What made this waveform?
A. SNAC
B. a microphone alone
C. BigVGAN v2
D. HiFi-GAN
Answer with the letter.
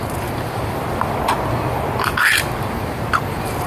B